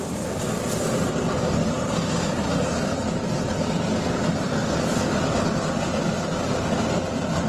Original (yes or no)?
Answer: yes